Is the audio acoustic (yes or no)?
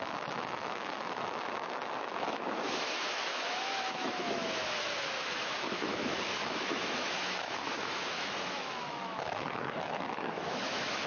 no